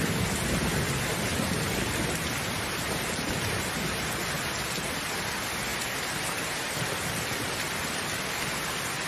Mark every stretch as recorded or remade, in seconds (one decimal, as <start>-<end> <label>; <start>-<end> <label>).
0.0-9.1 recorded

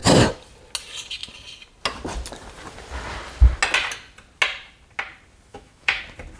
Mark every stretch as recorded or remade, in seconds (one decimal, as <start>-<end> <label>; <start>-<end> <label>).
0.0-5.5 recorded; 5.5-6.0 remade; 6.0-6.4 recorded